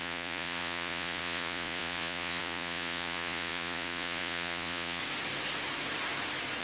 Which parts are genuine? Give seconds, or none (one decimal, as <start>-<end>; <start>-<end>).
5.0-6.6